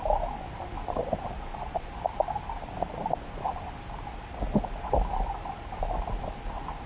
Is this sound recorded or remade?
recorded